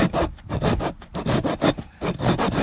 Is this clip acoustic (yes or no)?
yes